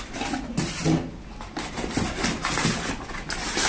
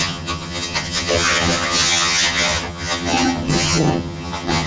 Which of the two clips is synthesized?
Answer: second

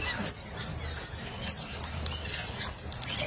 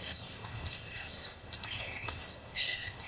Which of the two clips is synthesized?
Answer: second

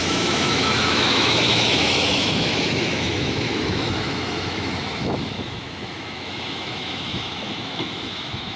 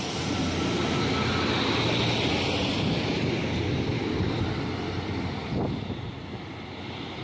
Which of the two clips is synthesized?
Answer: first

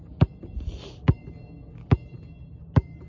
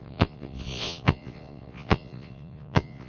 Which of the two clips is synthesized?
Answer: second